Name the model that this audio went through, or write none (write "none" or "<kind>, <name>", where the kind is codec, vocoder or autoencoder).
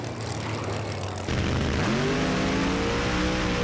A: none